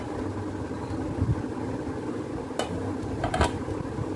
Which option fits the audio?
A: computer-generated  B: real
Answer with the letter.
B